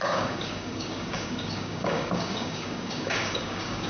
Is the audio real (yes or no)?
no